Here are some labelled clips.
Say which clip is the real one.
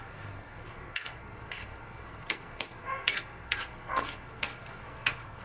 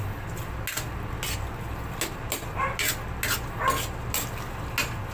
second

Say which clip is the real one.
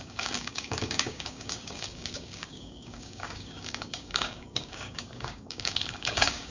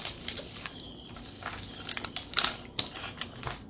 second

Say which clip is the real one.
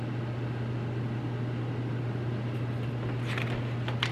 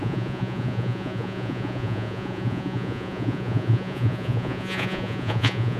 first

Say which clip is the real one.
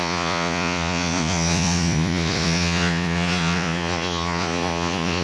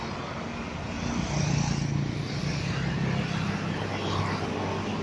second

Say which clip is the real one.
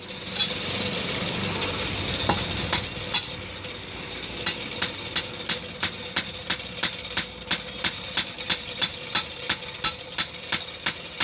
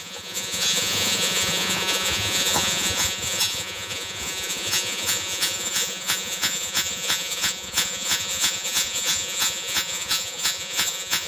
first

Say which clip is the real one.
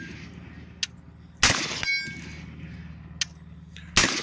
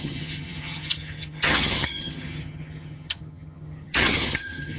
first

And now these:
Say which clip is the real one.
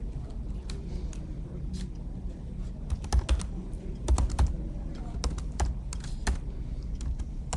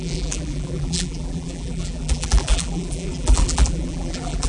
first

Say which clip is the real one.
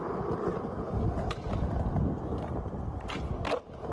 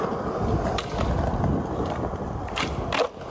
second